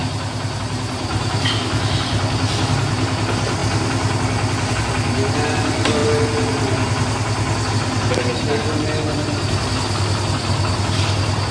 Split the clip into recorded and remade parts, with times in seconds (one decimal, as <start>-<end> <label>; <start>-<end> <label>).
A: 0.0-11.5 recorded